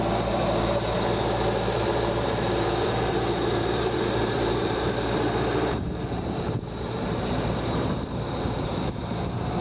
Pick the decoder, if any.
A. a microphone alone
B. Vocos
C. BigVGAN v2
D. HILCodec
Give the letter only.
C